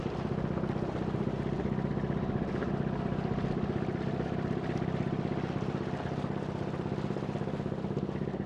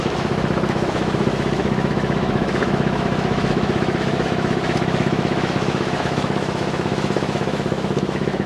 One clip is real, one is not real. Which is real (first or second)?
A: first